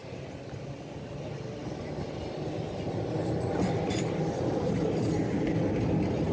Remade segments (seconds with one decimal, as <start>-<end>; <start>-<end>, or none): none